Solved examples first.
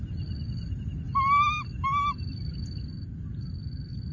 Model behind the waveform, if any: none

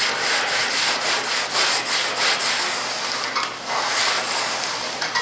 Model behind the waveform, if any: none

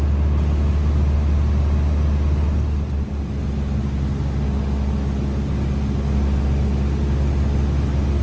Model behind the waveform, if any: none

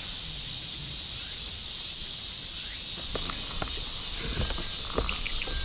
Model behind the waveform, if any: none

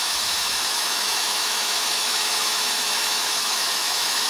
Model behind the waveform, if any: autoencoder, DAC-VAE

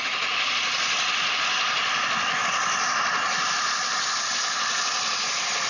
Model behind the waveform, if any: none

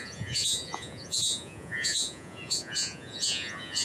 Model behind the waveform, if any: vocoder, Vocos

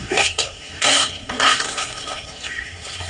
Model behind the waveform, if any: codec, SNAC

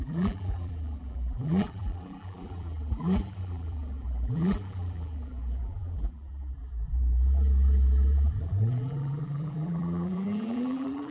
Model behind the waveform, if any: vocoder, BigVGAN v2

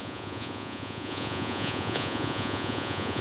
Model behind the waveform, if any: vocoder, Vocos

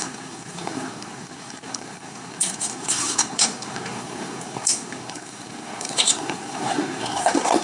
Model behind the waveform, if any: codec, SNAC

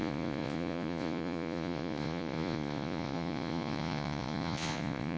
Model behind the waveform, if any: vocoder, Vocos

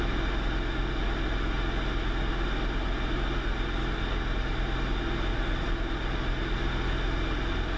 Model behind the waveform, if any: none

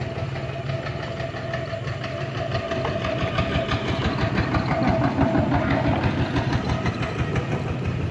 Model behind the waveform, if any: none